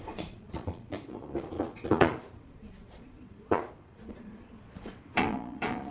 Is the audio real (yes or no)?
no